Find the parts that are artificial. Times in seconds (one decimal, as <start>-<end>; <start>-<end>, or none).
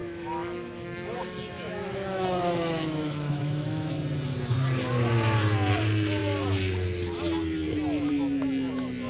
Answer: 0.0-3.9